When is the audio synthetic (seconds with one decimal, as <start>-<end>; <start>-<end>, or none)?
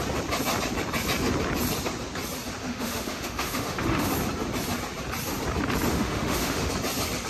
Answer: 2.6-4.1; 5.9-6.7